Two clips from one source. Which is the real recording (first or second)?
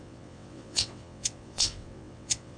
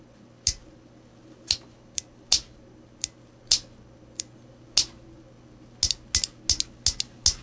second